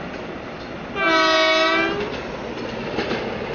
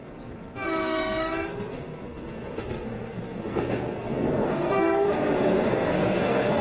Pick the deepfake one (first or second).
second